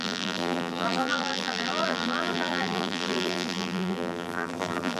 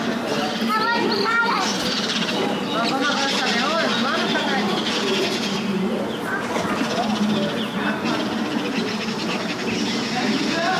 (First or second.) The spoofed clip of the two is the first